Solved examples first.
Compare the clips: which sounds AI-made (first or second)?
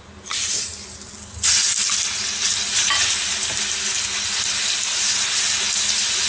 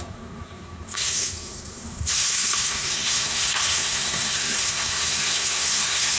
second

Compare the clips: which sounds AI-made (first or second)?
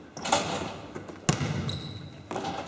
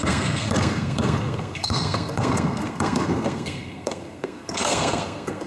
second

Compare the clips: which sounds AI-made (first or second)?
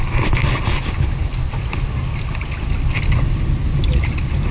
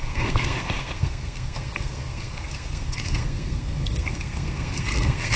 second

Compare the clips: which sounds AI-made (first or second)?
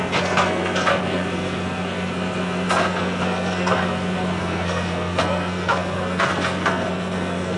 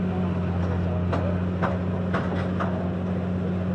first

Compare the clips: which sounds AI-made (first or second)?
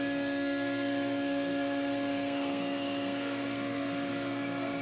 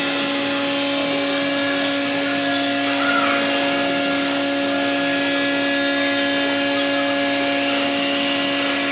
first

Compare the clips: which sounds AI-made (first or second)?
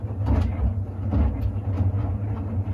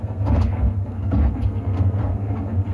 second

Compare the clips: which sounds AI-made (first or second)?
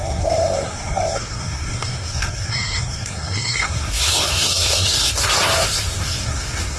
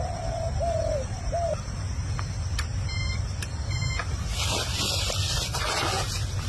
first